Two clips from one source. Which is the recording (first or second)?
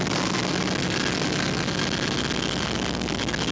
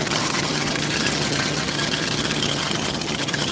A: first